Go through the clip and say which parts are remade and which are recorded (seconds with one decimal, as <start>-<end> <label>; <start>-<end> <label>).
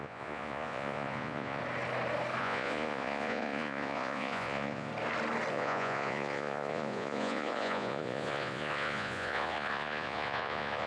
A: 0.0-1.6 remade; 1.6-2.4 recorded; 2.4-4.9 remade; 4.9-5.5 recorded; 5.5-10.9 remade